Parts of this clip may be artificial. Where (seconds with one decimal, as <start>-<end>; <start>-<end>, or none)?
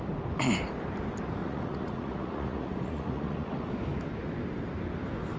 1.4-3.7